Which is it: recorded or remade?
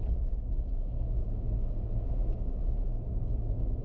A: recorded